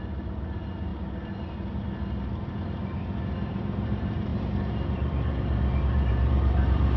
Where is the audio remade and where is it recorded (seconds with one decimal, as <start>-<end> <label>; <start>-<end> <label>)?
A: 0.0-0.9 remade; 0.9-2.3 recorded; 2.3-7.0 remade